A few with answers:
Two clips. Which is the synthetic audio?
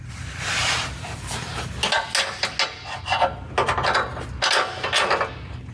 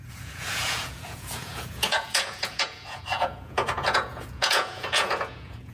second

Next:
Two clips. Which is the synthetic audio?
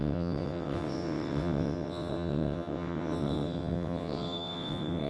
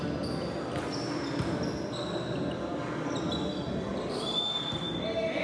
first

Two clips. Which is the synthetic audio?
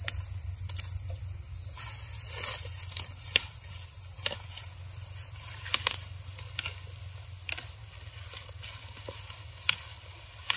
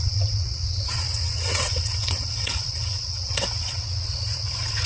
second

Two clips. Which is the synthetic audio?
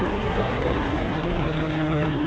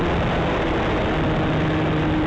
first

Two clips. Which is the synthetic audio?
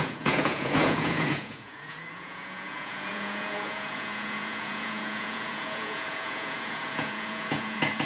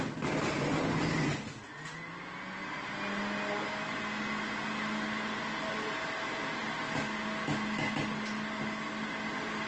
first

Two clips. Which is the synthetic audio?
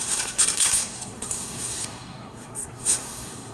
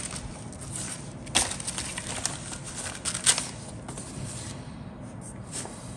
first